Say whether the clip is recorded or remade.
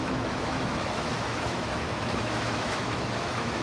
remade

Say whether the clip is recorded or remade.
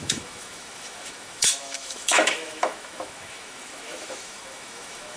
remade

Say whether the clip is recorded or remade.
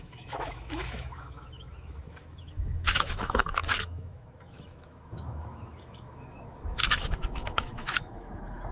remade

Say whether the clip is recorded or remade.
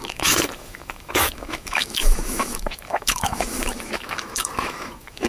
remade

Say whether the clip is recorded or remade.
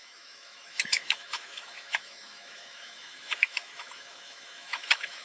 remade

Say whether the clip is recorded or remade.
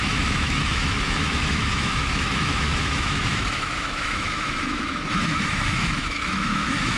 remade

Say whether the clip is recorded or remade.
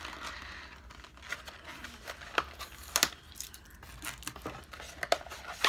recorded